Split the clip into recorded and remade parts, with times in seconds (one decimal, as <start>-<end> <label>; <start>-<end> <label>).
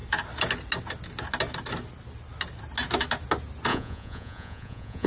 0.0-3.7 recorded; 3.7-5.1 remade